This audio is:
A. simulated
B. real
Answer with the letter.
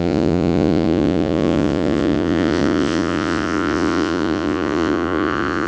A